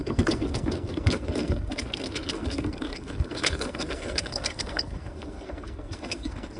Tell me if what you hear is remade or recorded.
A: remade